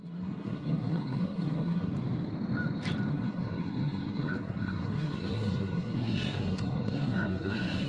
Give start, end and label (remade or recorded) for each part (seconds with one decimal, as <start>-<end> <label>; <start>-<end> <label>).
0.0-1.9 remade; 1.9-3.1 recorded; 3.1-7.9 remade